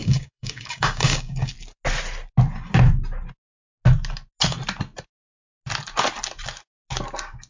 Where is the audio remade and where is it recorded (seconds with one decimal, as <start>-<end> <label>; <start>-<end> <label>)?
0.0-1.5 remade; 1.5-7.5 recorded